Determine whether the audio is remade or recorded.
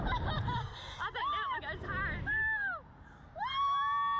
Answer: recorded